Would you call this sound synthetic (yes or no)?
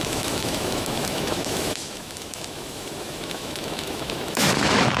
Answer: yes